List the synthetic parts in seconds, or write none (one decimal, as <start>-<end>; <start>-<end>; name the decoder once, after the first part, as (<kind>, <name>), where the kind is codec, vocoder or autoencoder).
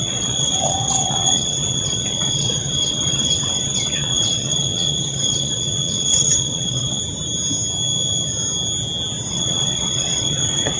0.0-7.0 (vocoder, WaveNeXt); 9.3-10.8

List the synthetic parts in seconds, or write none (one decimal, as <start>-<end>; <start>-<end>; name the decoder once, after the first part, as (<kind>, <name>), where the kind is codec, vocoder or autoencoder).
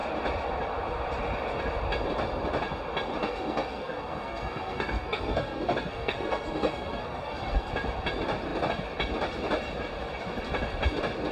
3.2-7.7 (codec, SNAC)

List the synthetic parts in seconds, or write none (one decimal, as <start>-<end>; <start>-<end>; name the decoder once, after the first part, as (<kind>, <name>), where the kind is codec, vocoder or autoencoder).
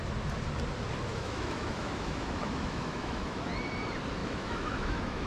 1.1-3.5 (autoencoder, DAC-VAE); 4.2-5.3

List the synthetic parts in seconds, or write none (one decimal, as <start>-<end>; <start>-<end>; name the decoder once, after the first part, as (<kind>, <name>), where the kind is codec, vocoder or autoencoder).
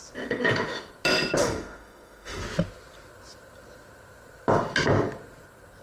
1.4-2.4 (autoencoder, DAC-VAE)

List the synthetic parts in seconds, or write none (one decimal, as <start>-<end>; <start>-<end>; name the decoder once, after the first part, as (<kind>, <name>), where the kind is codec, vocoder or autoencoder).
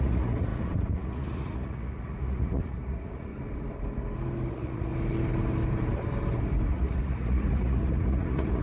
0.0-3.3 (vocoder, Vocos); 4.5-4.9; 6.7-8.6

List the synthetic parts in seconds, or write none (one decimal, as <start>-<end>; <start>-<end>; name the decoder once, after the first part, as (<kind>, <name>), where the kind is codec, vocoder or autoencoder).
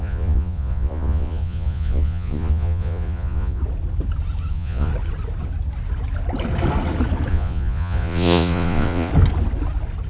0.0-3.6 (vocoder, Vocos); 4.5-4.9; 7.3-9.1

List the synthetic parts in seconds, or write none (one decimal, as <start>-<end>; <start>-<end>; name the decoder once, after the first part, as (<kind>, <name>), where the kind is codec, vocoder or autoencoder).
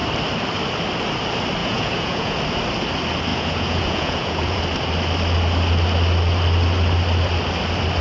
1.6-2.4 (vocoder, Vocos); 3.3-4.6